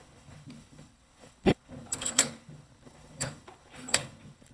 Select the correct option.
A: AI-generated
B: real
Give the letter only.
A